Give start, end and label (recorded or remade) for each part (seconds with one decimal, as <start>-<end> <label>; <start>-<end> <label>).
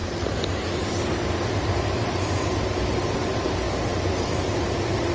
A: 0.0-5.1 recorded